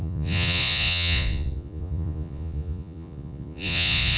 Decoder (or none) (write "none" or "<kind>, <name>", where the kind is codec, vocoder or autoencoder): vocoder, Vocos